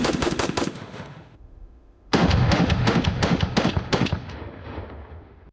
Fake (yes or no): yes